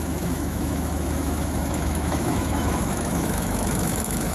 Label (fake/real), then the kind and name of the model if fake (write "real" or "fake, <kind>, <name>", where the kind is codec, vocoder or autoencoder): fake, autoencoder, DAC-VAE